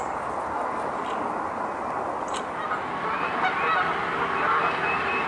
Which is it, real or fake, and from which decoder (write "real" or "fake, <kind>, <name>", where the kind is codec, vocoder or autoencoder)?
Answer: real